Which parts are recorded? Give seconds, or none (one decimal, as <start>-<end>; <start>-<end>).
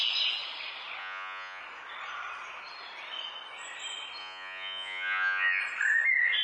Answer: 0.0-1.0; 1.6-4.2; 5.6-6.4